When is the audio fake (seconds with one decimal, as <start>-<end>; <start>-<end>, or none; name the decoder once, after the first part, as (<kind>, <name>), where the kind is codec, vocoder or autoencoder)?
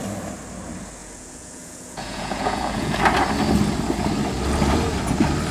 1.0-3.0 (vocoder, Vocos)